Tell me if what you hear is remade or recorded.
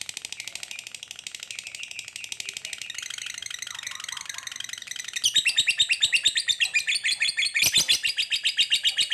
recorded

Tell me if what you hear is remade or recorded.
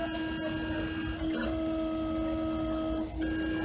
recorded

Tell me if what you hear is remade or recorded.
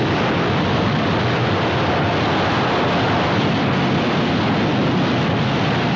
recorded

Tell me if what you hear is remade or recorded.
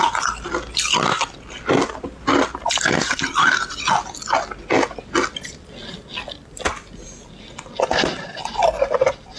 recorded